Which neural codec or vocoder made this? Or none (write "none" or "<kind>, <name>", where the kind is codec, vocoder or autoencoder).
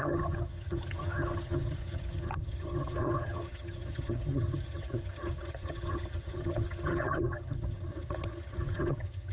vocoder, HiFi-GAN